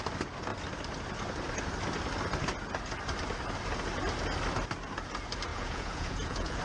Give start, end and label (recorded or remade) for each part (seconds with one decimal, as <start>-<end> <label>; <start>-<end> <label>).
0.0-5.5 recorded; 5.5-6.6 remade